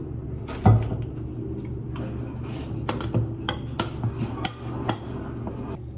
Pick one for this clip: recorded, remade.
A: recorded